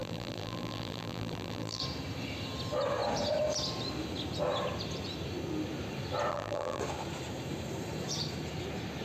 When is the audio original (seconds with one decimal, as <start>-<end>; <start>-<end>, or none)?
1.8-6.3; 6.8-9.0